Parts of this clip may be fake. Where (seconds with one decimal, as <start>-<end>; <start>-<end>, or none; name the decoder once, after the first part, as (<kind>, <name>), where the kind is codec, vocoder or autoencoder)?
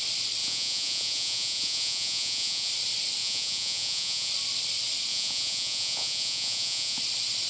0.4-2.7 (vocoder, Vocos); 3.2-4.3; 5.1-7.0